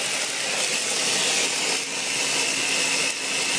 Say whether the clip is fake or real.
real